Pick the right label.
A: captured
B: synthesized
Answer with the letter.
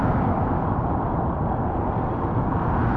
A